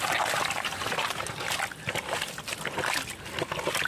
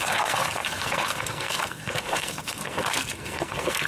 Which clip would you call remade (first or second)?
second